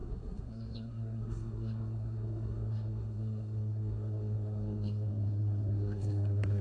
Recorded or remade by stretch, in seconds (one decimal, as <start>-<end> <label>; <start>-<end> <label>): 0.0-6.6 remade